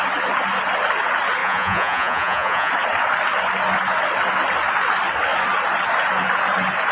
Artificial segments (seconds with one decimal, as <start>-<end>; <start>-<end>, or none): 1.4-2.7